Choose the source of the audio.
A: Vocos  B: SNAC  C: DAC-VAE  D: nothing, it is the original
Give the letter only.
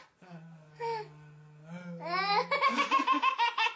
D